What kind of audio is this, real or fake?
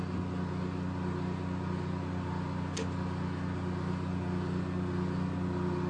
real